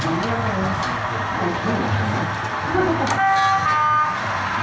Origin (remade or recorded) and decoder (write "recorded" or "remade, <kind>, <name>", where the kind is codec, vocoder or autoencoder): recorded